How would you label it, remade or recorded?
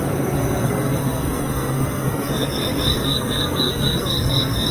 remade